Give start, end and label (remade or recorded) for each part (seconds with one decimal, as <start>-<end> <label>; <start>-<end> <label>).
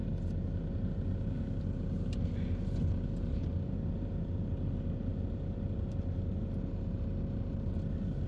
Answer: 0.0-8.3 recorded